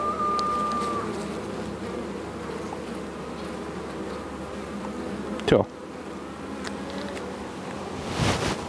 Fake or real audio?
real